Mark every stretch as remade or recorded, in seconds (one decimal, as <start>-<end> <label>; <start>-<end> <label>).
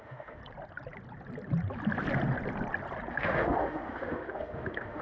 0.0-0.4 remade; 0.4-3.1 recorded; 3.1-5.0 remade